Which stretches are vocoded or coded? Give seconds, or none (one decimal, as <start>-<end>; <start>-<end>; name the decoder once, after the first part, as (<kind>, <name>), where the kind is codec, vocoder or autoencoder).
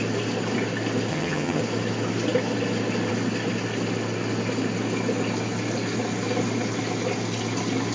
1.1-1.6 (vocoder, HiFi-GAN)